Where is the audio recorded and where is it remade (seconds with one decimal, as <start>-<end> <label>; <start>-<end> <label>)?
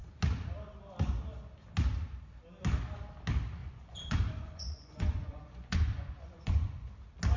0.0-3.6 recorded; 3.6-6.9 remade; 6.9-7.4 recorded